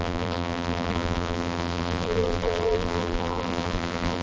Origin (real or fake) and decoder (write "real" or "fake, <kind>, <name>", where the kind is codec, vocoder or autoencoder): fake, vocoder, BigVGAN v2